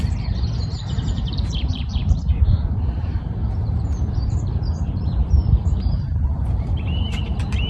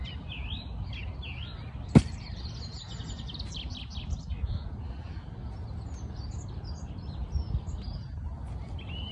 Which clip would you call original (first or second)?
second